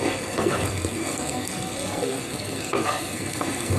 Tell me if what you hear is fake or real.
fake